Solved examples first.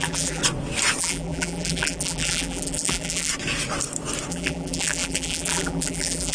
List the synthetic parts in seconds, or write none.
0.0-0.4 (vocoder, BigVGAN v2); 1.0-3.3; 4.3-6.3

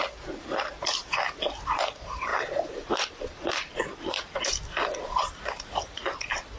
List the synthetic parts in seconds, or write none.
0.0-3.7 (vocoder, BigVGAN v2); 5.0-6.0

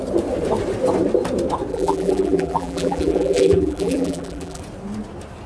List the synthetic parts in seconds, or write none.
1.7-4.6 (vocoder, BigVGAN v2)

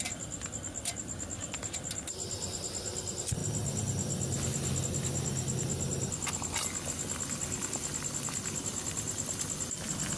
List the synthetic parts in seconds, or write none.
none

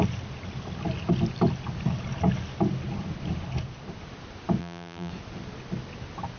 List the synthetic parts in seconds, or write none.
4.6-5.1 (vocoder, BigVGAN v2)

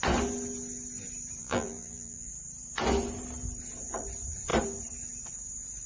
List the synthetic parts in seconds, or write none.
1.4-2.3 (vocoder, BigVGAN v2)